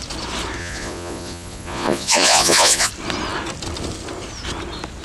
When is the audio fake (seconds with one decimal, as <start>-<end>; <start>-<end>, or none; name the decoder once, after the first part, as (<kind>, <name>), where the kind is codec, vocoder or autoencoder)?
0.6-2.9 (vocoder, Vocos)

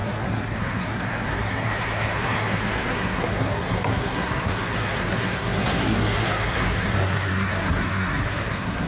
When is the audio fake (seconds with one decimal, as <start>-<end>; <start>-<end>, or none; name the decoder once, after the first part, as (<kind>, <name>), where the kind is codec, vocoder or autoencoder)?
0.0-8.9 (codec, SNAC)

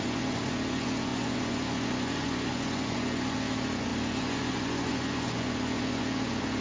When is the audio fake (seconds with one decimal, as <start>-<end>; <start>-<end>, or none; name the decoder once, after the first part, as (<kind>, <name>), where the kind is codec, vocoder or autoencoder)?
0.0-6.6 (vocoder, Vocos)

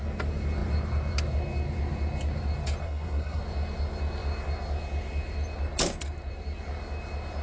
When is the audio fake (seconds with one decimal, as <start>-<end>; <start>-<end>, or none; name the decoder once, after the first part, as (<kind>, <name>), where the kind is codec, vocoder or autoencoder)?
2.8-3.4 (codec, SNAC)